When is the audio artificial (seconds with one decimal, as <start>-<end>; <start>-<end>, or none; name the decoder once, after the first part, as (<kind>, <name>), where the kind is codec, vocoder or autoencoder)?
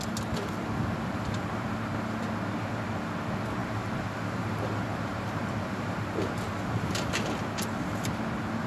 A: 3.6-5.9 (vocoder, BigVGAN v2)